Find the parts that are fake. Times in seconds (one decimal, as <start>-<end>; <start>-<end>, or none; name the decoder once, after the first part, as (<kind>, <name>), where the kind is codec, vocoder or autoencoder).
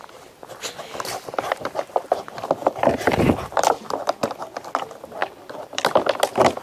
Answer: 2.6-3.7 (vocoder, BigVGAN v2); 5.2-5.8